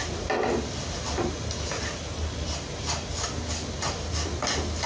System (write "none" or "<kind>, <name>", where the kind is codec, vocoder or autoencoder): none